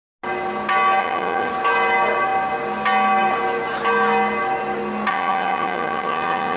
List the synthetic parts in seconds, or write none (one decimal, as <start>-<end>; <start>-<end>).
1.0-1.5; 5.1-6.6

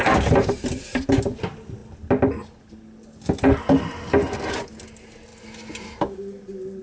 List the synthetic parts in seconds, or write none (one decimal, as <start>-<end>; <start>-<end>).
none

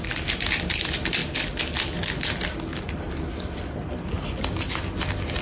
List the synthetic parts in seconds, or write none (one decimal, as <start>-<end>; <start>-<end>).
none

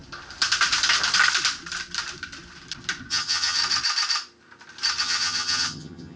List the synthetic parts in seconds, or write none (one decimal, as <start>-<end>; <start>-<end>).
3.1-3.6; 5.0-6.2

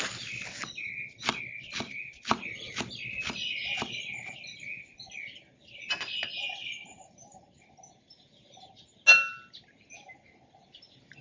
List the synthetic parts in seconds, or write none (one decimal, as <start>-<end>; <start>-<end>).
none

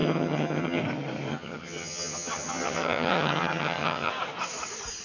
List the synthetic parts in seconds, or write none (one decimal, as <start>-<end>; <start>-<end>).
0.0-0.8; 1.3-4.1

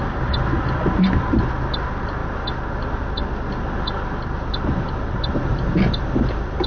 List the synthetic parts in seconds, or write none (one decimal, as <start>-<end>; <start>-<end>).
none

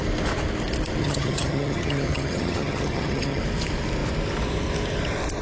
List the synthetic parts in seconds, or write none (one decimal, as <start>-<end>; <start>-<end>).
1.0-3.4